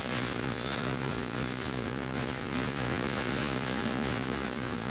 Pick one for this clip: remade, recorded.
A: remade